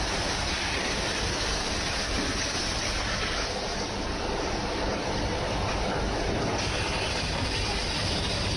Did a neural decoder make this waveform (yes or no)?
no